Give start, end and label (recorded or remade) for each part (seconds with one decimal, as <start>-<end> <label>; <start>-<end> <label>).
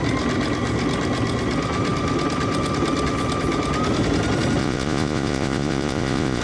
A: 0.0-4.6 recorded; 4.6-6.4 remade